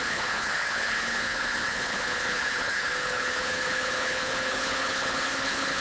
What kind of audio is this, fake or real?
fake